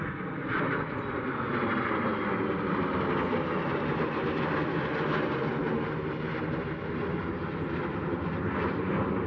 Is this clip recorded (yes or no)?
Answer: yes